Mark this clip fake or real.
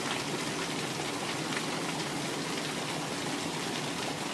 real